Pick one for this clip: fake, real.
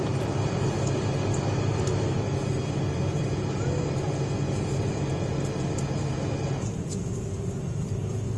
real